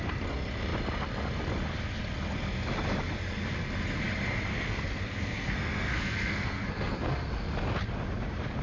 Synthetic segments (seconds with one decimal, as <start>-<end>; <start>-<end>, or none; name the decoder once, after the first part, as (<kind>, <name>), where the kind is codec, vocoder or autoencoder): 4.5-7.3 (codec, SNAC)